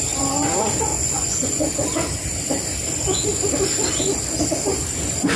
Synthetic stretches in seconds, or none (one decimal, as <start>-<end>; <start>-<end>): 0.9-1.7